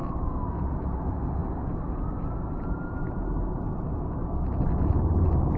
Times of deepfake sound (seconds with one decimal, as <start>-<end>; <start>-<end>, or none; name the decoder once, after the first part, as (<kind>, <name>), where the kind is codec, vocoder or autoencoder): none